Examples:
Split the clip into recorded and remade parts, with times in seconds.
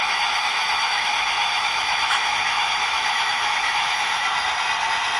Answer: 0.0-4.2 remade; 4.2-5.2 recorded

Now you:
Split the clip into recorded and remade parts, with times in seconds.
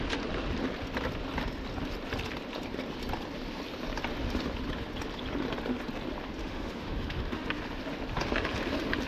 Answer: 0.0-6.4 recorded; 6.4-7.5 remade; 7.5-9.1 recorded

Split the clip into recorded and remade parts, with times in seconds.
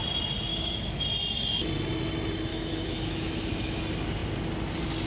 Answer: 0.0-0.5 recorded; 0.5-1.0 remade; 1.0-2.5 recorded; 2.5-3.8 remade; 3.8-5.1 recorded